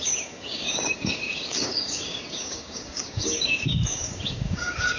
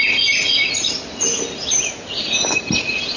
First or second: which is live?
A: second